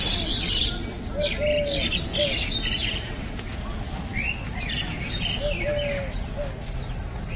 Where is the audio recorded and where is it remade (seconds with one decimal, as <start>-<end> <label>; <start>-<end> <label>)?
0.0-7.4 recorded